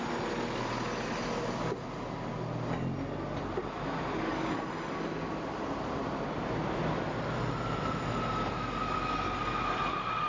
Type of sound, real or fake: real